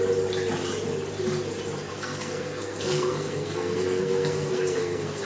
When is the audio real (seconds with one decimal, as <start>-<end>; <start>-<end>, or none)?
0.0-1.9